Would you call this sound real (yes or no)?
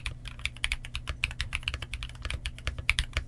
yes